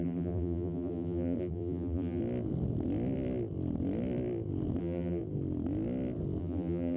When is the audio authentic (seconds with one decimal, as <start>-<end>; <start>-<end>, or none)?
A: 2.2-4.8; 5.2-6.4